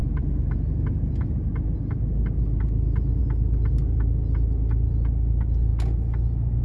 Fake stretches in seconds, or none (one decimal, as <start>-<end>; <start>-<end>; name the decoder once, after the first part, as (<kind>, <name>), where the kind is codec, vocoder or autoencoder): none